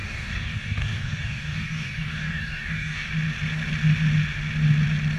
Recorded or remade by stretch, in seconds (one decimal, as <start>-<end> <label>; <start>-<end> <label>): 0.0-3.1 remade; 3.1-5.2 recorded